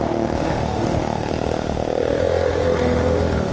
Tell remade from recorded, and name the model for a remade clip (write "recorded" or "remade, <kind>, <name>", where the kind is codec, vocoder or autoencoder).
remade, autoencoder, DAC-VAE